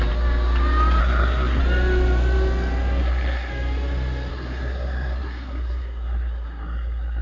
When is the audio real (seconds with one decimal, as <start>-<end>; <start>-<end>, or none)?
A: 0.0-1.0; 1.6-3.0; 3.5-4.3